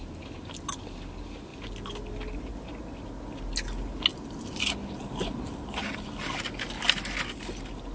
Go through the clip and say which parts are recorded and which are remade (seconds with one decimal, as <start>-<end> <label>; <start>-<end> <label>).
0.0-7.9 recorded